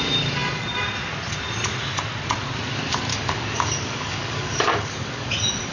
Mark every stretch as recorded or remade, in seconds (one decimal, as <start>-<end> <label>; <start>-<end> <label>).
0.0-3.1 recorded; 3.1-5.3 remade; 5.3-5.7 recorded